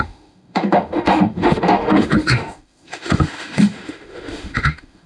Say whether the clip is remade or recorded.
remade